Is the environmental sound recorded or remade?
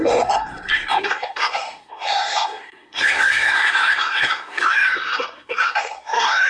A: remade